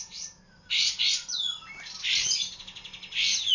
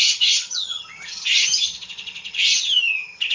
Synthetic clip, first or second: second